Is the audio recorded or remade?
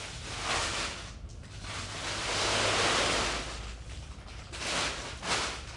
recorded